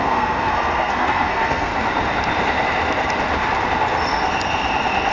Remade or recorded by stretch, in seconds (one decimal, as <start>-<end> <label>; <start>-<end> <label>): 0.0-1.7 remade; 1.7-5.1 recorded